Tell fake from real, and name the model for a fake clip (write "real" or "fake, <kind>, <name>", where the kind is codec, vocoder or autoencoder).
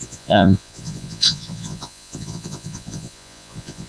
fake, vocoder, Vocos